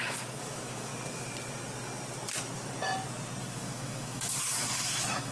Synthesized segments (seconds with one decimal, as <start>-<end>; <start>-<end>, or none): 0.0-0.9; 3.4-5.3